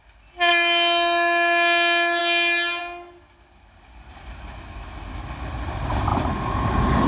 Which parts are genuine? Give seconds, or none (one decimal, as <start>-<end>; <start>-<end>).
0.0-7.1